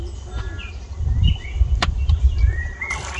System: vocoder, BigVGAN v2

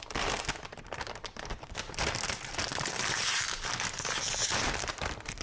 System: none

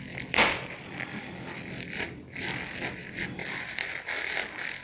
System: vocoder, BigVGAN v2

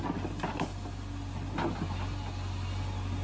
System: none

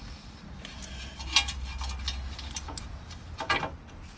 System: none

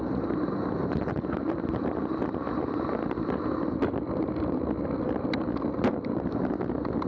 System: none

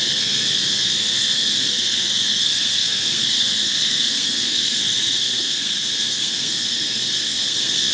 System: codec, SNAC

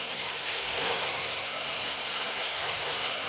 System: codec, SNAC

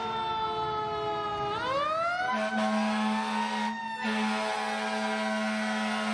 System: none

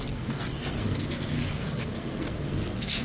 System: codec, SNAC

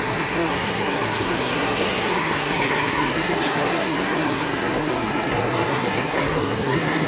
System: codec, SNAC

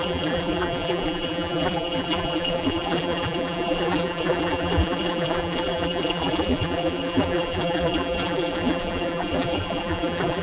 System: vocoder, BigVGAN v2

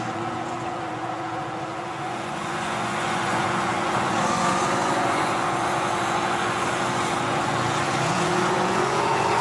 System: vocoder, Vocos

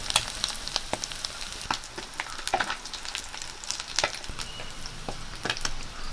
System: none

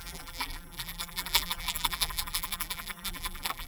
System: vocoder, BigVGAN v2